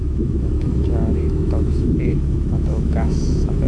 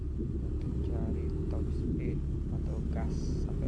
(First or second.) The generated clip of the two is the first